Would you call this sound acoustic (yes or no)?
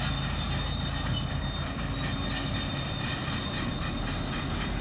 yes